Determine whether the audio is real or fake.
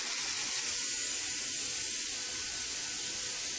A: real